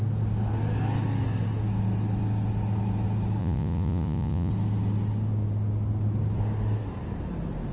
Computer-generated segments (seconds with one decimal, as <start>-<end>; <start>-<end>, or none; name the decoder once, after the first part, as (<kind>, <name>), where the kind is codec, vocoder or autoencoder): 3.4-4.5 (vocoder, Vocos)